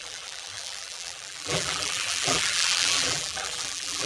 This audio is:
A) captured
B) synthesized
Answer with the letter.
B